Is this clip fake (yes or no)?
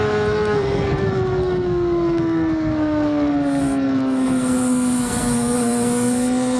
yes